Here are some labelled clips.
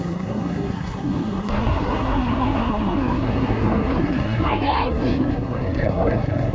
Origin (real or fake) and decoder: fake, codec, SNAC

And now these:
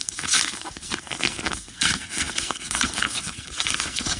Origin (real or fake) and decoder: fake, codec, SNAC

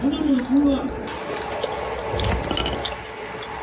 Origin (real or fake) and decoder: real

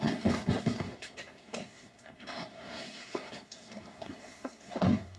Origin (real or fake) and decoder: fake, codec, SNAC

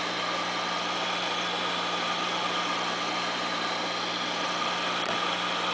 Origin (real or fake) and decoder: real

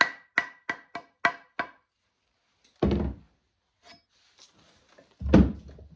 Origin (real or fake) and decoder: real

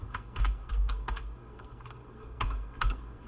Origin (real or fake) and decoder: fake, codec, SNAC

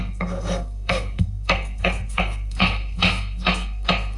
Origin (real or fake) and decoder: fake, codec, SNAC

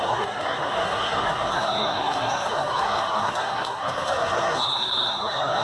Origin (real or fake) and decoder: fake, codec, SNAC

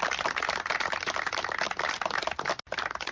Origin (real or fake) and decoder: real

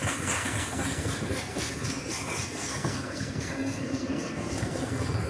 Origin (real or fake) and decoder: fake, codec, SNAC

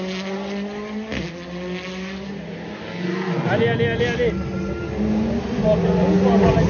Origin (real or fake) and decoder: real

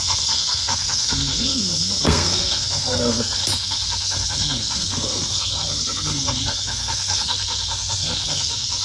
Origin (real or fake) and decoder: fake, codec, SNAC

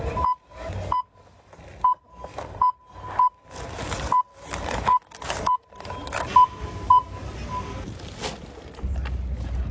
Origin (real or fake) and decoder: real